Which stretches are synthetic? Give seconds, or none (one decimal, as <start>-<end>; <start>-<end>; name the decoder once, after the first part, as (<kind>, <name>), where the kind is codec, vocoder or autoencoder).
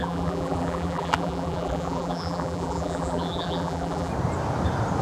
0.0-4.1 (vocoder, BigVGAN v2)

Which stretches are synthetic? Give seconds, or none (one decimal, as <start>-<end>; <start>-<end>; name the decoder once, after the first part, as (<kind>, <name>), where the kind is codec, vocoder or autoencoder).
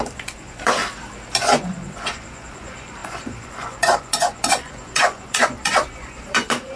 0.0-0.8 (vocoder, Vocos); 1.4-6.8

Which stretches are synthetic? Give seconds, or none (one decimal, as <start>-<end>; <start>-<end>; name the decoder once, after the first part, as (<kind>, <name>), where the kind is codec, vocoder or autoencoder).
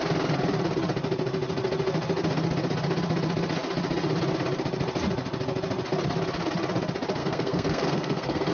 7.2-8.5 (codec, SNAC)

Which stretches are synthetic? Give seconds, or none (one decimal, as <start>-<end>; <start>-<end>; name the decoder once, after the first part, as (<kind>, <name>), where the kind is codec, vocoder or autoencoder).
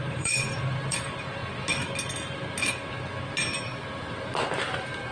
0.0-1.4 (vocoder, BigVGAN v2); 4.0-5.1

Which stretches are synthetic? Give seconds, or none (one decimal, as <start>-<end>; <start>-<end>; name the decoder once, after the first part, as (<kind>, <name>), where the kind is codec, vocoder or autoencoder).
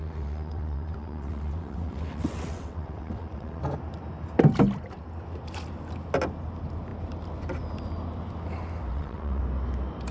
0.0-3.6 (vocoder, WaveNeXt); 8.9-9.4